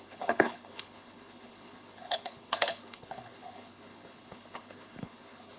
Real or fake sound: fake